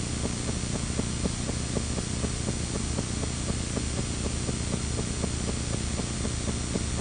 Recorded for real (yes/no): yes